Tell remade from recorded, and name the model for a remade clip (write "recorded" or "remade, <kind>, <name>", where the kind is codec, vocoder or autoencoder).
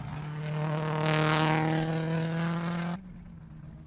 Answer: recorded